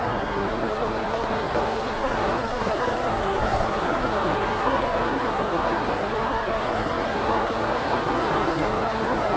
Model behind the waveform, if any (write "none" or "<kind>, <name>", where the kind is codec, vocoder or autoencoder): codec, SNAC